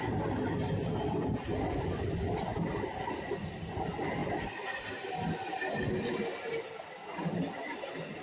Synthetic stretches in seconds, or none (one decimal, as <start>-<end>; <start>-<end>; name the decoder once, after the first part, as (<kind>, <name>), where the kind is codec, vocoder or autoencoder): none